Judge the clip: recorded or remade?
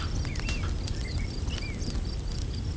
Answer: recorded